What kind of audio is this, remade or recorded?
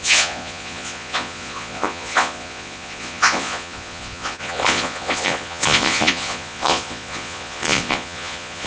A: remade